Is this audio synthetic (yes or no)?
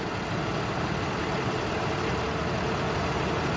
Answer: no